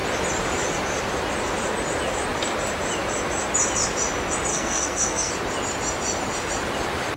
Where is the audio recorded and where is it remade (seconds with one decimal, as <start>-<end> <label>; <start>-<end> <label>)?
0.0-4.5 recorded; 4.5-5.3 remade; 5.3-7.2 recorded